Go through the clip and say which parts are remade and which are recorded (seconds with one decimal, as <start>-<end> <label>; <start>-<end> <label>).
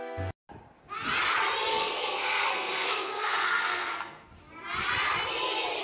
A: 0.0-1.7 recorded; 1.7-4.3 remade; 4.3-5.8 recorded